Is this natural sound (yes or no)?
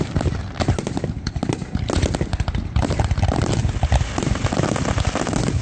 yes